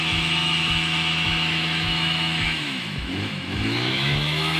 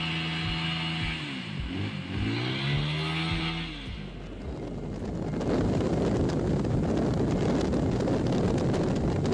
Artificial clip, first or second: first